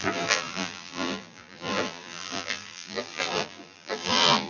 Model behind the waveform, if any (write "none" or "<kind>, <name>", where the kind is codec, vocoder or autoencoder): vocoder, BigVGAN v2